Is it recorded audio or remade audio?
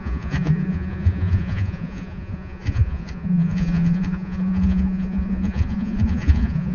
remade